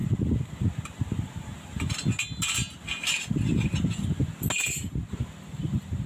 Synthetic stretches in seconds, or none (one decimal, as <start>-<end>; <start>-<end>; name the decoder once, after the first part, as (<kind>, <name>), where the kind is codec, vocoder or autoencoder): none